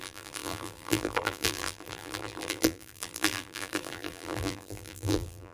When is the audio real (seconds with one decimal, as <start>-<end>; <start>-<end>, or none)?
none